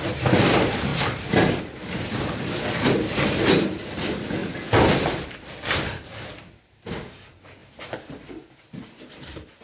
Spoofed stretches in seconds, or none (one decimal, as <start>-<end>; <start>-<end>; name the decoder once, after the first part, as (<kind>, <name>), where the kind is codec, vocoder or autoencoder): 0.0-0.9 (vocoder, BigVGAN v2); 1.6-7.6; 8.5-9.6